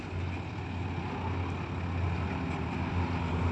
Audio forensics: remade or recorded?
recorded